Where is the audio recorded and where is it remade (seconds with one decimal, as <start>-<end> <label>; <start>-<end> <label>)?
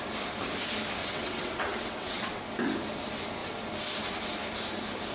0.0-1.0 recorded; 1.0-2.4 remade; 2.4-5.1 recorded